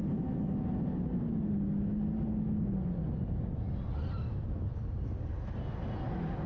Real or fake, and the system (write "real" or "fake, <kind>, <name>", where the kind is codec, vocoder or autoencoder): real